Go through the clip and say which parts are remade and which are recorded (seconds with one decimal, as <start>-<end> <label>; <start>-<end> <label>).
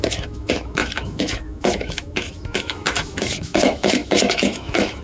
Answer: 0.0-5.0 remade